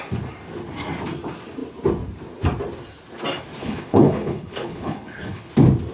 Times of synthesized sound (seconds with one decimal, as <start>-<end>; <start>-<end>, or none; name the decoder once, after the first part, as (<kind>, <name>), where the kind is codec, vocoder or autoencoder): 3.6-5.5 (codec, HILCodec)